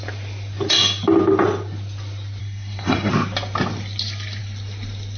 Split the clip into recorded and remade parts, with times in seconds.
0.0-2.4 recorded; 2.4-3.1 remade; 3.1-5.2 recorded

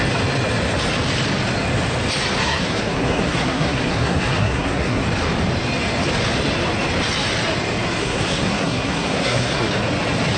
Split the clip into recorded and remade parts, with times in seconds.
0.0-2.4 recorded; 2.4-5.0 remade; 5.0-8.0 recorded; 8.0-9.7 remade; 9.7-10.4 recorded

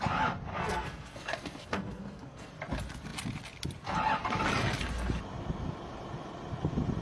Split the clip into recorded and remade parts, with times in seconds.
0.0-0.5 recorded; 0.5-2.5 remade; 2.5-7.0 recorded

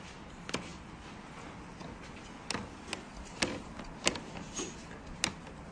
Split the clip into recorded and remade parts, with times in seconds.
0.0-5.7 recorded

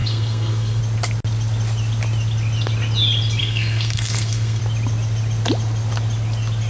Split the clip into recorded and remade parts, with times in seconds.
0.0-0.8 remade; 0.8-3.4 recorded; 3.4-4.6 remade; 4.6-6.7 recorded

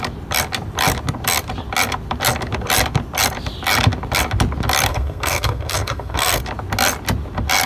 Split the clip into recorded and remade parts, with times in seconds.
0.0-4.9 recorded; 4.9-6.4 remade; 6.4-7.7 recorded

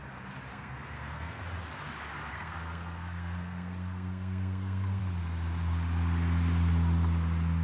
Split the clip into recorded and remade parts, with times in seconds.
0.0-0.5 recorded; 0.5-1.4 remade; 1.4-2.3 recorded; 2.3-5.0 remade; 5.0-7.6 recorded